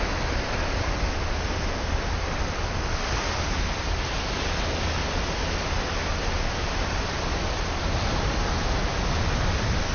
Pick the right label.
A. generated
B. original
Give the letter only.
B